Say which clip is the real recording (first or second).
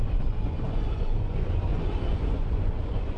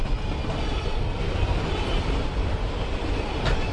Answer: second